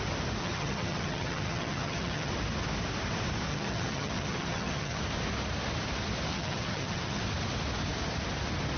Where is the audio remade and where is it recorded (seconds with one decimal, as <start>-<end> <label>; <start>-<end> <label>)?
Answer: 0.0-0.4 recorded; 0.4-2.3 remade; 2.3-3.5 recorded; 3.5-5.0 remade; 5.0-6.3 recorded; 6.3-7.2 remade; 7.2-8.8 recorded